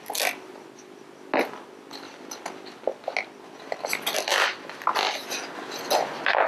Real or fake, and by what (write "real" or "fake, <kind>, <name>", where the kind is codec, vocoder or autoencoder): real